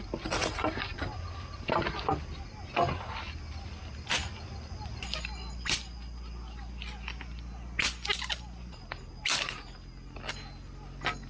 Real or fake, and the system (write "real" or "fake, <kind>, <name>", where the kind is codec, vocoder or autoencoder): real